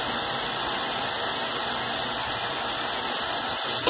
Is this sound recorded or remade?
recorded